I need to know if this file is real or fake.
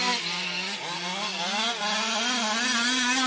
real